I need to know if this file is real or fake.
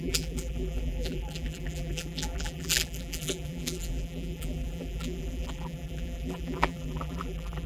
fake